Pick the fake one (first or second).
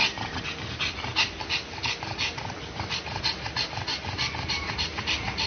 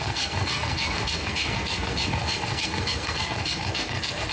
second